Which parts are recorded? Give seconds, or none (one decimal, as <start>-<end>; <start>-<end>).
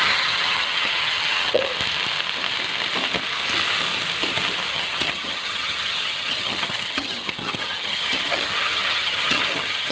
1.7-4.7